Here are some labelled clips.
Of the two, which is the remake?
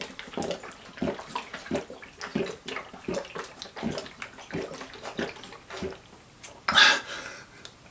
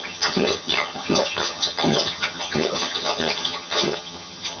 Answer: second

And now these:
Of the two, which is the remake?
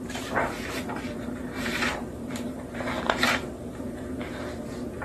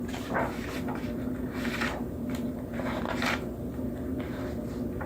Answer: first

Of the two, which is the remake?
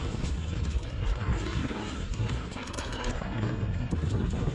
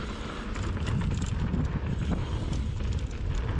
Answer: first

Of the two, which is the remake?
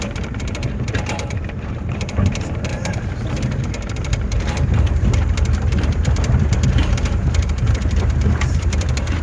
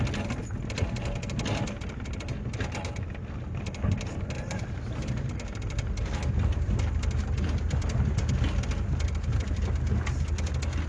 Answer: first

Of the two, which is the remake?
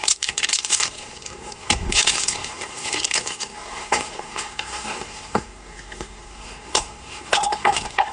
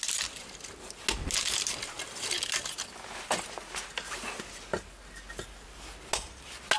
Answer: first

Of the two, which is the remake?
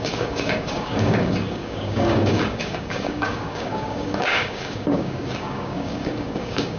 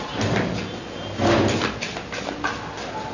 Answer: first